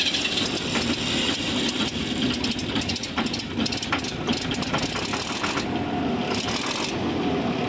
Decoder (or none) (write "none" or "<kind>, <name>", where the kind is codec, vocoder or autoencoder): none